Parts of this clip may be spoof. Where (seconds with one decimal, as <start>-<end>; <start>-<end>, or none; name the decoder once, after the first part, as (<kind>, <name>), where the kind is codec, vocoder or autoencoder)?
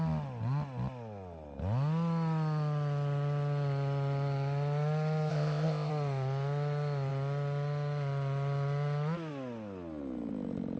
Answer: 5.3-5.9 (codec, ZipCodec)